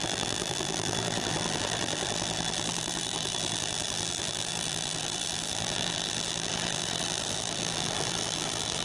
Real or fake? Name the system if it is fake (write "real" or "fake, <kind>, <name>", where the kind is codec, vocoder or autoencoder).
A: fake, vocoder, BigVGAN v2